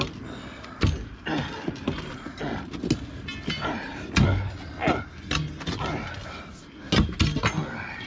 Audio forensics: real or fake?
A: real